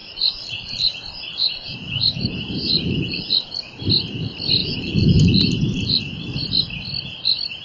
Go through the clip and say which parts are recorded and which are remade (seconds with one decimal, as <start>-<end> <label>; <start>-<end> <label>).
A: 0.0-3.9 remade; 3.9-4.6 recorded; 4.6-6.0 remade; 6.0-7.6 recorded